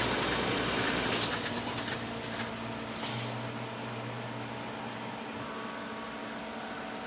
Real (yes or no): yes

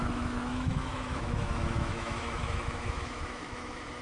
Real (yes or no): no